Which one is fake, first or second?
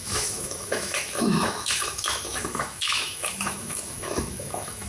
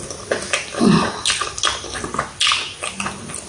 first